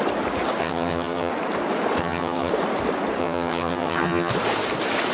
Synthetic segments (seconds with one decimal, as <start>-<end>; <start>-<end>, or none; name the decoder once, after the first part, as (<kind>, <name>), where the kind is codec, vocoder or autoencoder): 0.6-1.3 (vocoder, HiFi-GAN); 2.0-2.5; 3.2-4.3